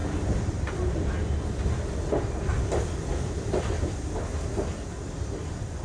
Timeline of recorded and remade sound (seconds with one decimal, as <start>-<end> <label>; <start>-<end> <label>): 0.0-5.8 recorded